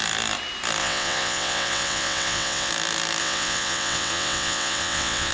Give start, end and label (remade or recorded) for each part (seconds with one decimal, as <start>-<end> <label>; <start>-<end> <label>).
0.0-0.8 recorded; 0.8-2.7 remade; 2.7-3.2 recorded; 3.2-5.3 remade